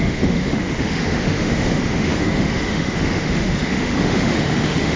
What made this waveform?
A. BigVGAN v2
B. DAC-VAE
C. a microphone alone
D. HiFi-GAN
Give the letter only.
B